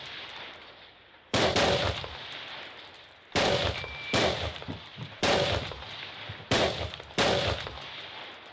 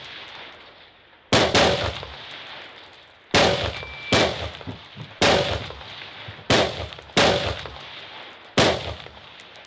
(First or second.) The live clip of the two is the second